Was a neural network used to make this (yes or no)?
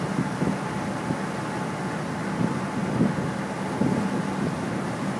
no